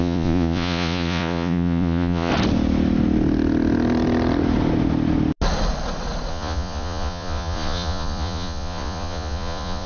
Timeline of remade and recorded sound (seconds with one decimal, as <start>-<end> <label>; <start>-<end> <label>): 0.0-2.3 remade; 2.3-6.3 recorded; 6.3-9.9 remade